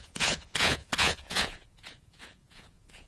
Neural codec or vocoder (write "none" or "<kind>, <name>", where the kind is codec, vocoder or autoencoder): vocoder, Vocos